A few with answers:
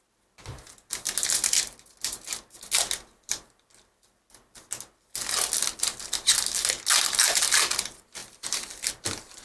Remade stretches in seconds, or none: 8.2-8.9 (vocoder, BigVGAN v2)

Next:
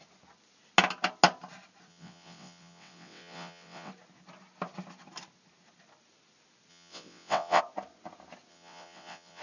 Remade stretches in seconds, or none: 1.9-3.9 (vocoder, WaveNeXt); 6.7-7.6; 8.5-9.4

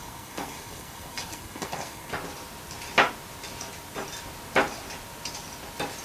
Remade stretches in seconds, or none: 0.0-2.1 (codec, SNAC)

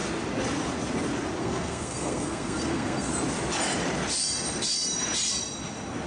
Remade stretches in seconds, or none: 1.4-3.1 (codec, SNAC)

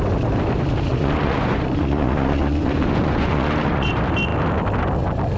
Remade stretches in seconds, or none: 0.9-3.9 (vocoder, Vocos)

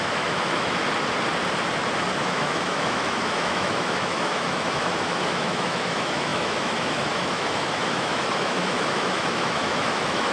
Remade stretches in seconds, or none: 0.0-0.8 (autoencoder, DAC-VAE); 2.2-10.3